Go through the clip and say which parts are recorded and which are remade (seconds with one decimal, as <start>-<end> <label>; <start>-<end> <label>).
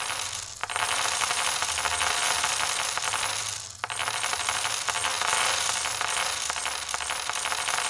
0.0-7.9 recorded